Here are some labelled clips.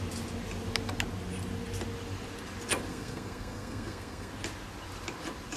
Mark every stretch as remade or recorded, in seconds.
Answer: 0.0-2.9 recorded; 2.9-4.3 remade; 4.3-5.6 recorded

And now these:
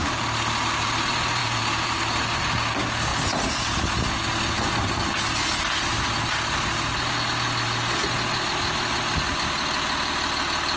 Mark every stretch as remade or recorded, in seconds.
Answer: 0.0-1.4 recorded; 1.4-2.0 remade; 2.0-10.8 recorded

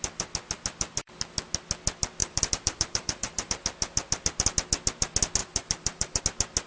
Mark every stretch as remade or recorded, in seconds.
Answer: 0.0-2.2 recorded; 2.2-3.5 remade; 3.5-5.4 recorded; 5.4-6.2 remade; 6.2-6.7 recorded

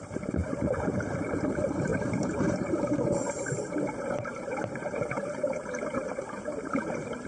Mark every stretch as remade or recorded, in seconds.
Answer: 0.0-7.3 remade

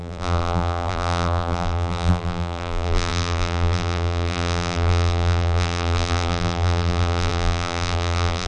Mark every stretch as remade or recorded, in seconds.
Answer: 0.0-8.5 remade

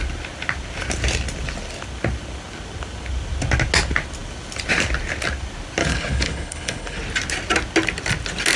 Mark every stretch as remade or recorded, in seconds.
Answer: 0.0-5.8 recorded; 5.8-7.0 remade; 7.0-8.6 recorded

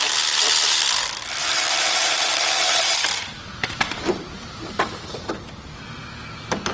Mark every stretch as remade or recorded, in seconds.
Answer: 0.0-1.4 recorded; 1.4-5.3 remade; 5.3-6.7 recorded

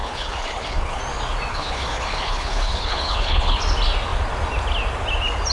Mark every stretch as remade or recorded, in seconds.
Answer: 0.0-1.0 remade; 1.0-1.5 recorded; 1.5-3.6 remade; 3.6-5.5 recorded